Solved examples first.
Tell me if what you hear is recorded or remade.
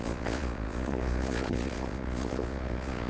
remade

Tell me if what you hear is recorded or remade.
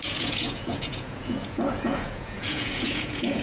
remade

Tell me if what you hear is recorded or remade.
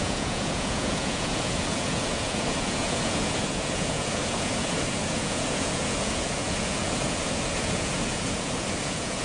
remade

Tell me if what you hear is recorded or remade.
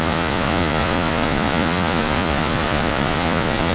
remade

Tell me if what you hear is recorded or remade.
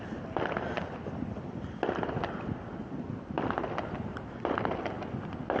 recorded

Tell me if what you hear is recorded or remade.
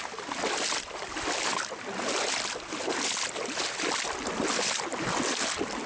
recorded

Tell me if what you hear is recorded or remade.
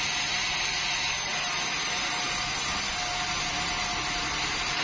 recorded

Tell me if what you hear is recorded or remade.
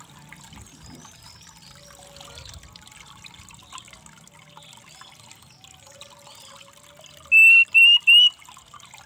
recorded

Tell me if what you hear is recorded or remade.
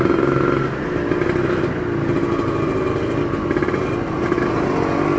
recorded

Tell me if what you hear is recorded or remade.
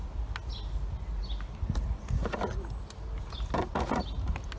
recorded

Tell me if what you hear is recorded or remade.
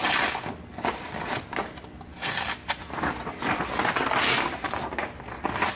recorded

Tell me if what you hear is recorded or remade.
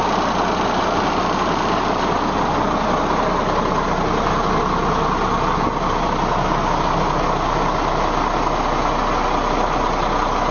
recorded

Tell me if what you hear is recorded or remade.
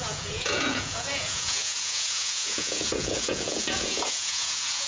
remade